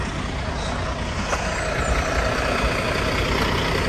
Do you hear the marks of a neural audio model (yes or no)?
no